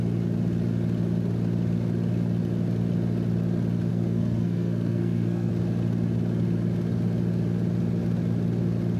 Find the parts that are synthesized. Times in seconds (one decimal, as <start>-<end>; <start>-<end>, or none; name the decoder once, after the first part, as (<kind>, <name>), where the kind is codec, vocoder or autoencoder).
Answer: 3.9-5.5 (codec, SNAC)